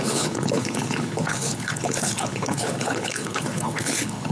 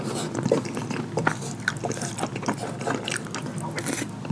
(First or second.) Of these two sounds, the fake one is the first